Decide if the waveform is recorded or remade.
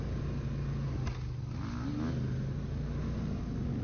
recorded